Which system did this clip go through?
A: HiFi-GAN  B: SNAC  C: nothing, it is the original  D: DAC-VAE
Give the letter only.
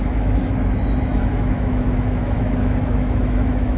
D